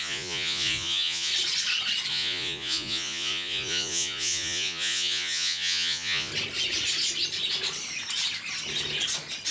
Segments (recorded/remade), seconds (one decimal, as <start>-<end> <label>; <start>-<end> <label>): 0.0-1.3 remade; 1.3-2.1 recorded; 2.1-6.3 remade; 6.3-9.5 recorded